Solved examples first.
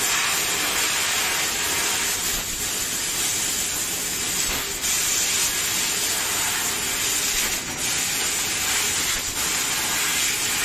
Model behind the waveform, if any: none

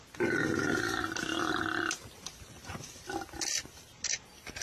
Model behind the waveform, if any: none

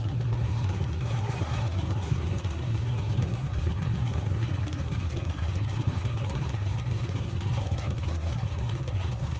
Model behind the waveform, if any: codec, SNAC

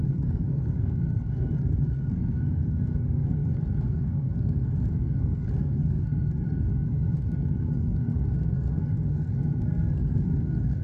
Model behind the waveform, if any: codec, SNAC